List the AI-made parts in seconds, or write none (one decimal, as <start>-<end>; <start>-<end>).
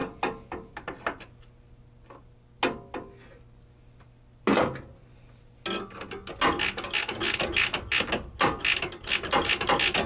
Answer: none